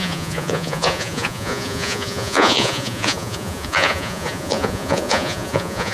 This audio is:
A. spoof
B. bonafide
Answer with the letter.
A